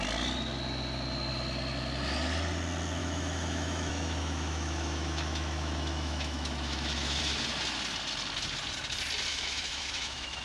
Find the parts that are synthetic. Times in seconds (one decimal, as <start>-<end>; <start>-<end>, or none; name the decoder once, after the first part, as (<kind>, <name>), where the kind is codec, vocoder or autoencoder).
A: 3.0-7.2 (autoencoder, DAC-VAE); 9.3-10.4